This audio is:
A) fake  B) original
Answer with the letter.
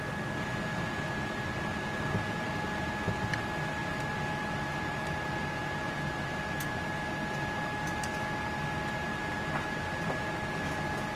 B